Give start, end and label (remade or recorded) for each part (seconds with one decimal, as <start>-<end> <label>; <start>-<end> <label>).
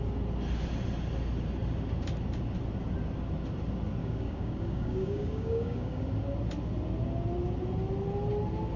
0.0-4.0 recorded; 4.0-6.0 remade; 6.0-8.8 recorded